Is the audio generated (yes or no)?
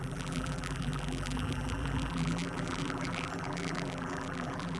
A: yes